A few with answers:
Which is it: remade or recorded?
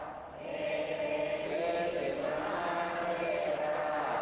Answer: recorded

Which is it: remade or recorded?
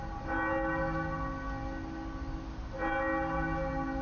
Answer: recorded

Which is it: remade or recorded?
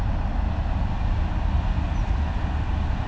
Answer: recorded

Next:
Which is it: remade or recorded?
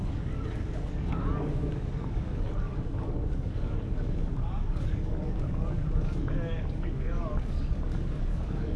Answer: remade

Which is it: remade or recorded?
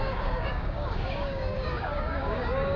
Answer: remade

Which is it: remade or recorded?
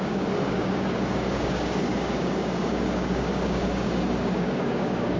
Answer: remade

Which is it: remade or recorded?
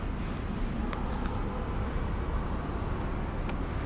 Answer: recorded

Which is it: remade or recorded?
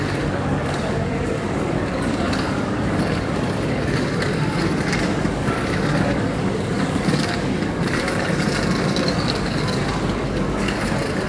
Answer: remade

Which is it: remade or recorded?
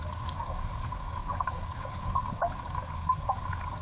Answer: remade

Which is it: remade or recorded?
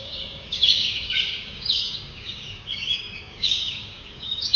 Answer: remade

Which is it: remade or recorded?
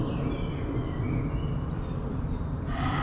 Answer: recorded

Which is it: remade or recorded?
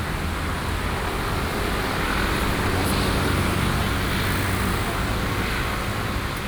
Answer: recorded